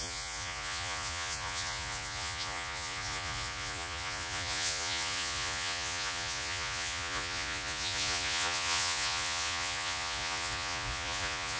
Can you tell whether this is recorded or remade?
remade